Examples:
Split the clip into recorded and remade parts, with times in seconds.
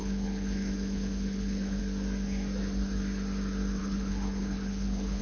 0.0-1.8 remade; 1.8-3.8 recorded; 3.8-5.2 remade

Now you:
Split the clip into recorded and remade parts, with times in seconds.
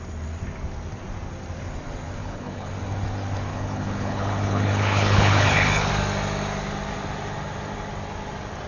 0.0-2.2 recorded; 2.2-2.7 remade; 2.7-3.5 recorded; 3.5-5.9 remade; 5.9-8.7 recorded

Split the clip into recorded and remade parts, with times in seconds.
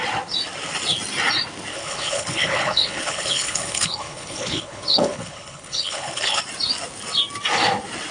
0.0-1.7 recorded; 1.7-6.4 remade; 6.4-8.1 recorded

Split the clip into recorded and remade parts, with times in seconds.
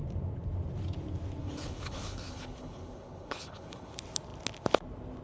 0.0-1.4 recorded; 1.4-3.9 remade; 3.9-5.2 recorded